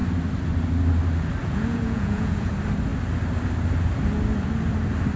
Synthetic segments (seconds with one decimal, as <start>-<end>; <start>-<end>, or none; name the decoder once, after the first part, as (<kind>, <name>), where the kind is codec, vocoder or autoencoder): 1.4-2.5 (vocoder, Vocos)